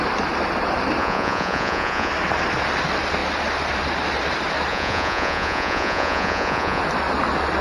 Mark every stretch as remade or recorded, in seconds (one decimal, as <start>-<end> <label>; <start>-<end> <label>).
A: 0.0-1.0 recorded; 1.0-2.1 remade; 2.1-4.7 recorded; 4.7-6.8 remade; 6.8-7.6 recorded